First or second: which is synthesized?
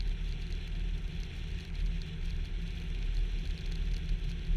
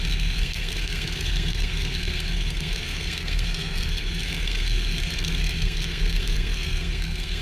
second